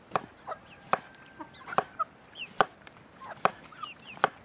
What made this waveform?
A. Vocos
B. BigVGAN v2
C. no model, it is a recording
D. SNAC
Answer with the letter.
C